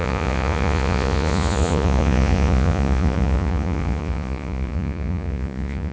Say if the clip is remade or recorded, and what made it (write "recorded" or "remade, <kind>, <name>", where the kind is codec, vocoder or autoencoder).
remade, vocoder, Vocos